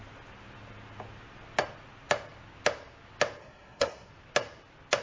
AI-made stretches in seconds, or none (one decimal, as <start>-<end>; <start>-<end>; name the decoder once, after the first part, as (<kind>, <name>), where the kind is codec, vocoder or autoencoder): 3.4-4.1 (codec, SNAC)